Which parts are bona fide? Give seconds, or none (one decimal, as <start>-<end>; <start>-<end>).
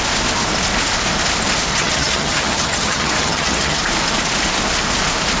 0.0-1.7; 3.8-5.4